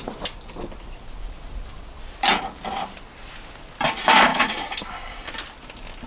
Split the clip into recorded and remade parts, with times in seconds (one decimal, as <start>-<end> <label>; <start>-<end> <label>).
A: 0.0-4.3 recorded; 4.3-5.3 remade; 5.3-6.1 recorded